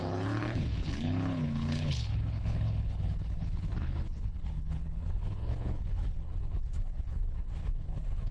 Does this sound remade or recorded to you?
remade